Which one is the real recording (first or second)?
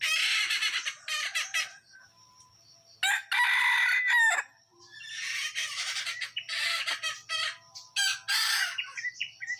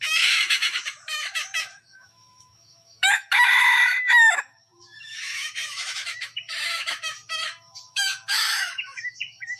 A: first